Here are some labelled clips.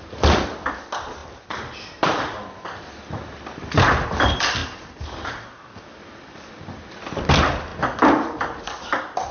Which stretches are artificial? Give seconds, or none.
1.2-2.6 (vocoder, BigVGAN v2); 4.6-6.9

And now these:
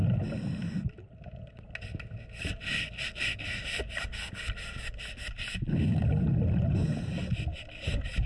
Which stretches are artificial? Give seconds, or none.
none

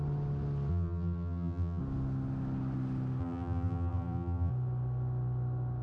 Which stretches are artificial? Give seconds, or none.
0.7-1.8 (vocoder, BigVGAN v2); 3.2-4.5

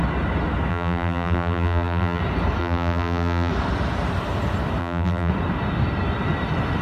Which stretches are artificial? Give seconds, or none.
0.7-2.2 (vocoder, BigVGAN v2); 2.6-3.5; 4.8-5.3

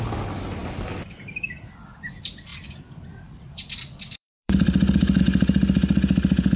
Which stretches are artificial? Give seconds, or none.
2.5-5.2 (vocoder, BigVGAN v2)